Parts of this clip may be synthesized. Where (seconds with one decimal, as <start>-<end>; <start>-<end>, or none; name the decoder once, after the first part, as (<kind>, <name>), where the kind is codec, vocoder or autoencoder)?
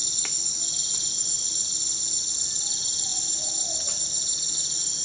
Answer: none